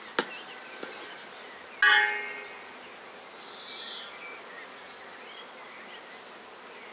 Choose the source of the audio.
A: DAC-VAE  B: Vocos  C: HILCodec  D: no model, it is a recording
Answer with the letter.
D